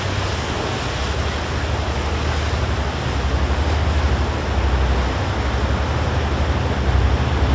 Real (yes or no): yes